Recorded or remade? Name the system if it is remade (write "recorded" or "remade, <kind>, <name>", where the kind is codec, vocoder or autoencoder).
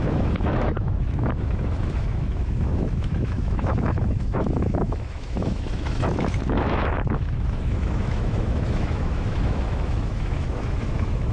remade, autoencoder, DAC-VAE